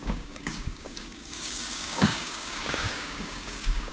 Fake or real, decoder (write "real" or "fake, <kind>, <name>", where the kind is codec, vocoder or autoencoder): fake, codec, DAC